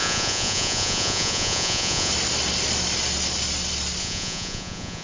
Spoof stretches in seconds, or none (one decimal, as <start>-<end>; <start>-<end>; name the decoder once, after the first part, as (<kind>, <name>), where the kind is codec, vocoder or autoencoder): 0.0-2.1 (vocoder, Vocos); 4.0-5.0